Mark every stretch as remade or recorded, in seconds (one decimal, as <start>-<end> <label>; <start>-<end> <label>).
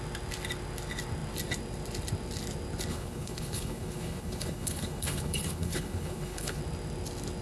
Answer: 0.0-2.9 recorded; 2.9-6.6 remade; 6.6-7.4 recorded